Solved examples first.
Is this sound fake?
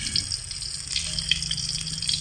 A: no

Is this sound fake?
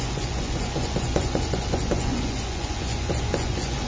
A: yes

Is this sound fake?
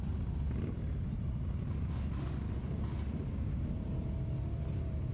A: no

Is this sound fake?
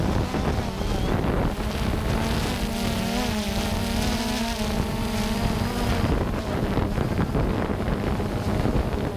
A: no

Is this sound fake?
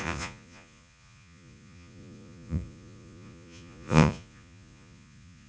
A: yes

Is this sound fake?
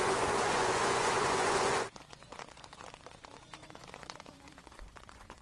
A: yes